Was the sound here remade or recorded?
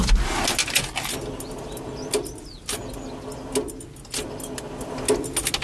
recorded